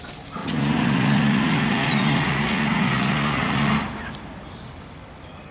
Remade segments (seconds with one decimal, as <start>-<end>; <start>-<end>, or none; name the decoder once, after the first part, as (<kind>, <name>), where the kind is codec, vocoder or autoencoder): 0.4-3.7 (vocoder, Vocos)